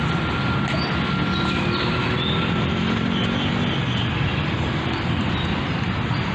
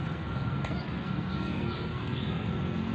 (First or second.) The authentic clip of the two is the first